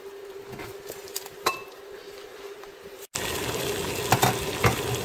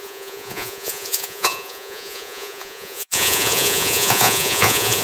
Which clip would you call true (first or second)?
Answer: first